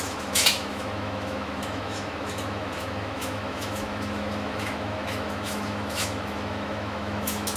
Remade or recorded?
remade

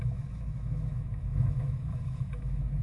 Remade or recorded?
remade